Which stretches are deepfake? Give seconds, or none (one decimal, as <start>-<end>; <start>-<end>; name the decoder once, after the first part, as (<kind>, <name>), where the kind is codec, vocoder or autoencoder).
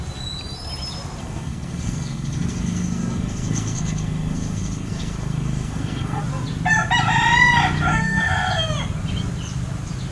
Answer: 1.2-6.2 (codec, SNAC); 7.9-8.5